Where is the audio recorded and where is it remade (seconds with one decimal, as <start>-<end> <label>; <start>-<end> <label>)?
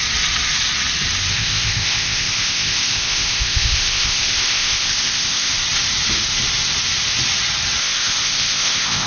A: 0.0-1.3 recorded; 1.3-5.5 remade; 5.5-7.8 recorded; 7.8-9.1 remade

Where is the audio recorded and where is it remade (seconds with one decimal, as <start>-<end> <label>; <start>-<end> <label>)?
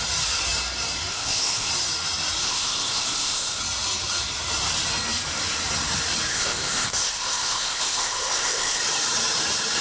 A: 0.0-1.1 recorded; 1.1-1.7 remade; 1.7-2.4 recorded; 2.4-3.6 remade; 3.6-6.3 recorded; 6.3-8.8 remade; 8.8-9.8 recorded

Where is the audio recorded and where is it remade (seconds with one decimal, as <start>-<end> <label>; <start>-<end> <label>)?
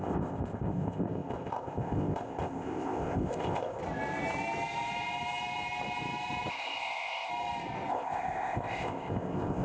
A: 0.0-3.8 remade; 3.8-6.5 recorded; 6.5-7.3 remade; 7.3-7.9 recorded; 7.9-9.6 remade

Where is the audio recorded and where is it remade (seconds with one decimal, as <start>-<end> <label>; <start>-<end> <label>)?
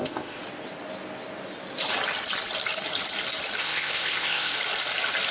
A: 0.0-0.4 remade; 0.4-3.6 recorded; 3.6-4.5 remade; 4.5-5.3 recorded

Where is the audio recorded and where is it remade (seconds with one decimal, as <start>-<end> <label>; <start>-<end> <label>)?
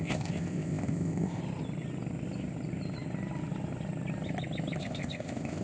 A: 0.0-1.4 remade; 1.4-4.8 recorded; 4.8-5.6 remade